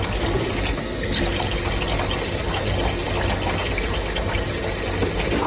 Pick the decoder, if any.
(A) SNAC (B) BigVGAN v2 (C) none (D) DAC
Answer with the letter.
C